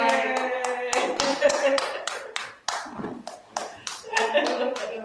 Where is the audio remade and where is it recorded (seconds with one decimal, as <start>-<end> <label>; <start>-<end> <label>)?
0.0-1.3 recorded; 1.3-4.3 remade; 4.3-5.0 recorded